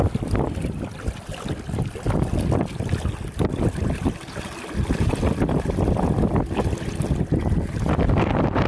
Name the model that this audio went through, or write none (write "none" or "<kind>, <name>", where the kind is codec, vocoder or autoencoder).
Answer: none